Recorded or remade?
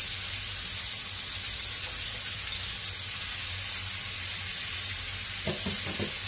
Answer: recorded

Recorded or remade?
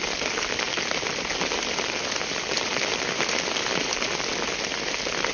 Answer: recorded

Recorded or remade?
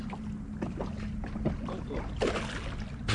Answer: recorded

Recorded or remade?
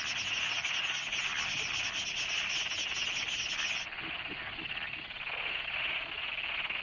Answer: recorded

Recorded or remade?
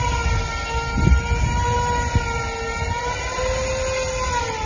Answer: recorded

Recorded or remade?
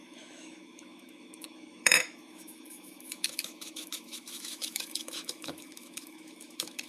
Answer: remade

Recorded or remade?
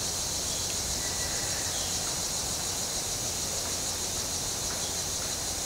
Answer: recorded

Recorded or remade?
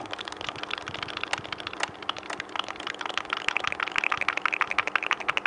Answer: recorded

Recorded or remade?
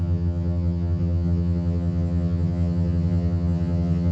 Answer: remade